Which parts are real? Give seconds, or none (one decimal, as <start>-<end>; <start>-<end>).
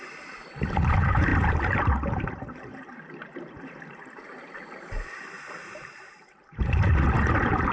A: none